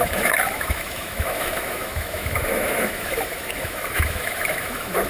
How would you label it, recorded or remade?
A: remade